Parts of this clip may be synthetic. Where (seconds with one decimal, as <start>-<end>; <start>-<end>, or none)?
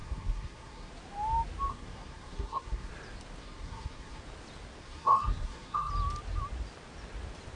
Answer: 0.0-0.9; 1.7-2.9; 3.4-4.2; 4.8-5.9